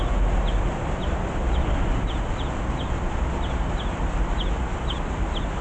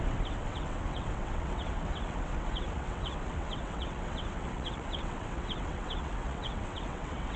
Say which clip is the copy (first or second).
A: second